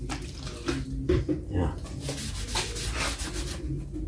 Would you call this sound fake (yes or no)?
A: no